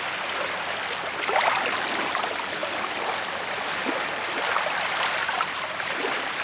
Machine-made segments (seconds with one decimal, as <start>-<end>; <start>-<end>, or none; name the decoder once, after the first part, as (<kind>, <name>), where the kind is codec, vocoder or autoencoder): 0.0-6.4 (vocoder, BigVGAN v2)